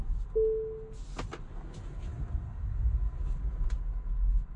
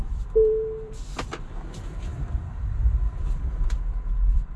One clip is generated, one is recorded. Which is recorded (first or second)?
first